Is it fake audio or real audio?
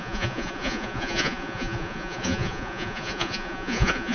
fake